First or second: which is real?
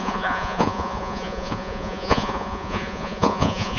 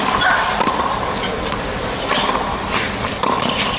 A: second